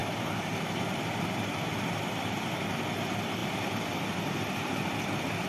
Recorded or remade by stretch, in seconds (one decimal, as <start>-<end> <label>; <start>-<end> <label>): 0.0-5.5 recorded